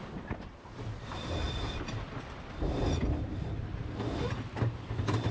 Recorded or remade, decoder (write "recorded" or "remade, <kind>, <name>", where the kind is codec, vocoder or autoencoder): recorded